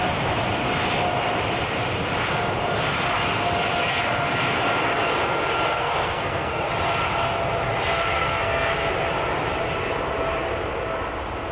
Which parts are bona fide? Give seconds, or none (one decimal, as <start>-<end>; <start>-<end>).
0.0-5.7; 6.7-8.1; 8.9-11.5